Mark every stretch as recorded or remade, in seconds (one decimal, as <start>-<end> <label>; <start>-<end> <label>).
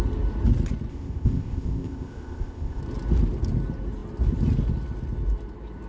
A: 0.0-0.9 recorded; 0.9-2.8 remade; 2.8-5.9 recorded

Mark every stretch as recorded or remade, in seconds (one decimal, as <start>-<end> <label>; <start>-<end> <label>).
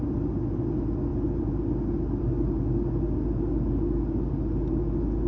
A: 0.0-5.3 recorded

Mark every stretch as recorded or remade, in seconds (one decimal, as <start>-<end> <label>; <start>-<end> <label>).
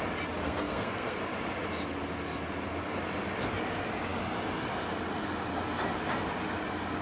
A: 0.0-0.4 recorded; 0.4-1.2 remade; 1.2-7.0 recorded